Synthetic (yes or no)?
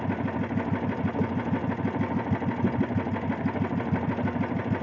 no